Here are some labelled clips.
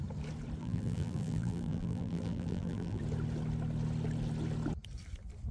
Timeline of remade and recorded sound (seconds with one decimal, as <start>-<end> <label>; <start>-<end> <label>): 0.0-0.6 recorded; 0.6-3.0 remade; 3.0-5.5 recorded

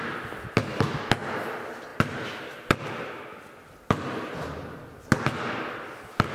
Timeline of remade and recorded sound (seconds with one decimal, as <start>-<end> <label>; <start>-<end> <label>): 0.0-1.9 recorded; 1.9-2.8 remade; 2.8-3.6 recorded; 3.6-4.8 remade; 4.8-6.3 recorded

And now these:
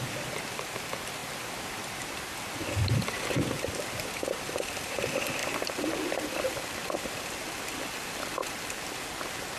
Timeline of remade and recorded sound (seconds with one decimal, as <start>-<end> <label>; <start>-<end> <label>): 0.0-9.6 recorded